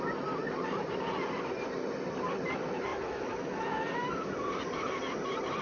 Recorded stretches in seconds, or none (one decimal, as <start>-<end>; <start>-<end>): 0.0-2.9; 4.3-5.6